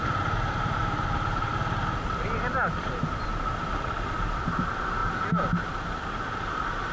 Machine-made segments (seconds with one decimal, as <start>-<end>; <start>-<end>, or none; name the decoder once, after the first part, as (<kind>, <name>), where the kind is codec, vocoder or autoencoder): 0.0-0.8 (vocoder, BigVGAN v2); 2.8-5.0; 6.5-6.9